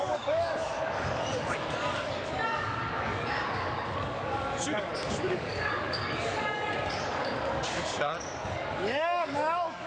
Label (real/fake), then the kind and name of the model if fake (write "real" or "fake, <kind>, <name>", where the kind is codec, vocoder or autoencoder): fake, codec, DAC